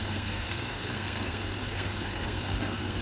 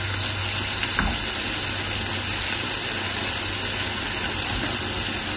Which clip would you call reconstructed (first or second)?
first